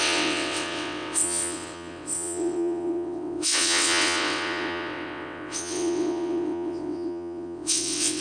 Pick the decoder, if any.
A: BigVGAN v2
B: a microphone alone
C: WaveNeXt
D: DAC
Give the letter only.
C